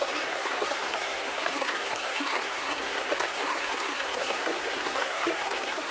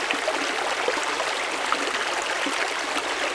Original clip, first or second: second